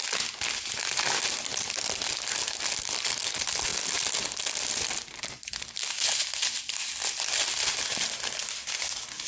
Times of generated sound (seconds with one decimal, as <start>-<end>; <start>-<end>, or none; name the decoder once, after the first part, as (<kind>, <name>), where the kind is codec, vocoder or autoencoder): 1.5-2.1 (vocoder, BigVGAN v2); 6.9-7.9